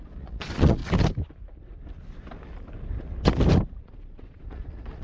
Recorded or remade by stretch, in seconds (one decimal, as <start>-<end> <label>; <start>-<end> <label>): 0.0-0.8 remade; 0.8-3.8 recorded; 3.8-5.0 remade